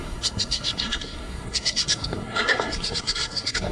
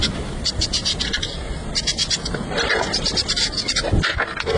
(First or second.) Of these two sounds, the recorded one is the second